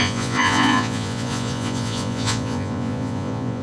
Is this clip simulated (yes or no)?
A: yes